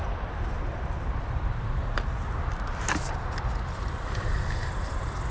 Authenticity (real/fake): real